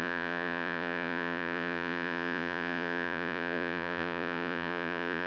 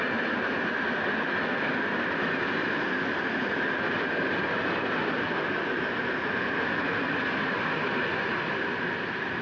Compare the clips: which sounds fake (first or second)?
first